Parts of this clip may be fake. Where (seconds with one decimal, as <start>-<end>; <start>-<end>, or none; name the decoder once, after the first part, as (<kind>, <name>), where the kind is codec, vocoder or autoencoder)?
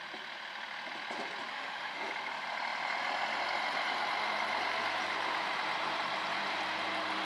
1.5-2.1 (autoencoder, DAC-VAE)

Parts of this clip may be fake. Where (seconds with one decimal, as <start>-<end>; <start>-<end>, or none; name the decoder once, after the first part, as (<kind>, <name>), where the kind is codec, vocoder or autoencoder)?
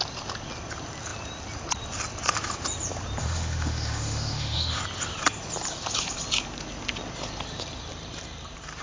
3.2-4.8 (autoencoder, DAC-VAE)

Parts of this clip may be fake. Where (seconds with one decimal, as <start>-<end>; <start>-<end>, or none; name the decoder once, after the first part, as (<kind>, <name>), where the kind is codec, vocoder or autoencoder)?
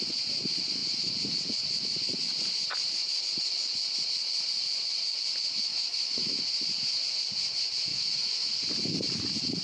5.7-6.4 (autoencoder, DAC-VAE); 7.9-8.5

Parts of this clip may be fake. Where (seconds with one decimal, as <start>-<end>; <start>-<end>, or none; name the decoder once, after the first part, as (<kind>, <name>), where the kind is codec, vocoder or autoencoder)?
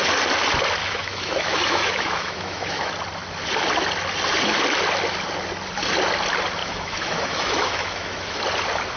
0.8-2.9 (autoencoder, DAC-VAE); 6.6-8.4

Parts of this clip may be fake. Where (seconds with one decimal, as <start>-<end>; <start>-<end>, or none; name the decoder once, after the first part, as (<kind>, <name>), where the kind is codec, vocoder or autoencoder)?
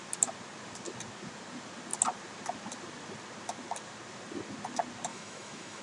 5.1-5.8 (autoencoder, DAC-VAE)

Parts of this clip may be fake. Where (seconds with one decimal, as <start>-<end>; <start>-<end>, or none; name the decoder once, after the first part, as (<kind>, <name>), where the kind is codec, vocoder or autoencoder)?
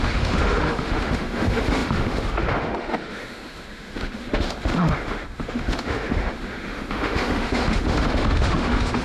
0.0-9.0 (autoencoder, DAC-VAE)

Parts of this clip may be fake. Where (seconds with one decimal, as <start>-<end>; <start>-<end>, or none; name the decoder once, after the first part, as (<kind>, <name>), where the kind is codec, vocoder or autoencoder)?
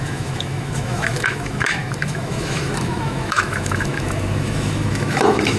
0.0-5.6 (autoencoder, DAC-VAE)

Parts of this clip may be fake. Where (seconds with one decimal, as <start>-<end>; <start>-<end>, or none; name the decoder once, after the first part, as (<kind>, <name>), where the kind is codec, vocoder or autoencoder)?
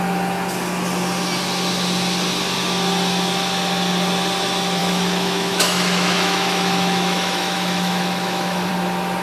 4.8-8.7 (autoencoder, DAC-VAE)